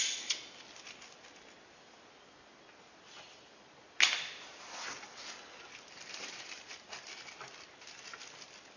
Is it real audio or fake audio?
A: real